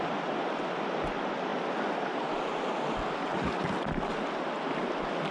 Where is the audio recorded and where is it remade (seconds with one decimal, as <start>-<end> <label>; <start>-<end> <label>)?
0.0-5.3 recorded